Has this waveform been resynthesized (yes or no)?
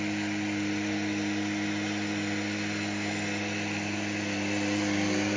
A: no